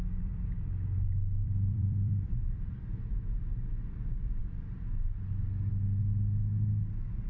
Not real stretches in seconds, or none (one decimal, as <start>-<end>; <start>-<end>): 0.0-0.6; 1.4-3.1